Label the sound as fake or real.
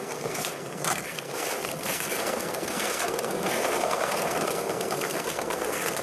fake